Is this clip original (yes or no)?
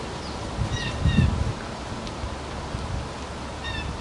yes